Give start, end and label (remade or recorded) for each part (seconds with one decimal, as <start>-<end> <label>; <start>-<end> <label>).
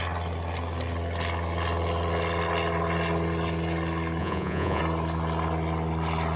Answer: 0.0-4.2 recorded; 4.2-4.8 remade; 4.8-6.4 recorded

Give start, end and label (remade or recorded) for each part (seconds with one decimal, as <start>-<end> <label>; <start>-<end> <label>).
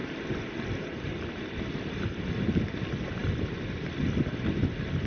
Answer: 0.0-5.1 recorded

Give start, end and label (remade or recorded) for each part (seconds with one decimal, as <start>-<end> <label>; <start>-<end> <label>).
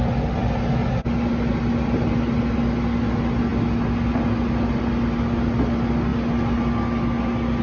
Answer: 0.0-7.6 recorded